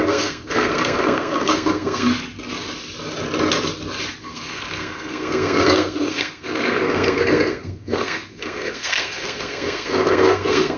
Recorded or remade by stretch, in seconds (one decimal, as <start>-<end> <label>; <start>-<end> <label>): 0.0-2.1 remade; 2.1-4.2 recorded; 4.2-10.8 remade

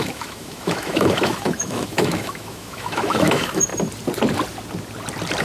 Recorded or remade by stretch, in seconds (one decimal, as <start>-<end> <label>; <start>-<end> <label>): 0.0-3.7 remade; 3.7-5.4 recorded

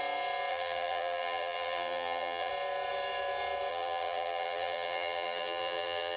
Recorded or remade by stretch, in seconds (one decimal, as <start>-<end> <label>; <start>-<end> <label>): 0.0-0.5 recorded; 0.5-2.5 remade; 2.5-3.7 recorded; 3.7-6.2 remade